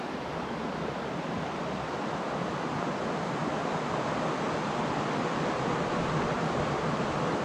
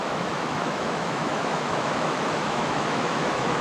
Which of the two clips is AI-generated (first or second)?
second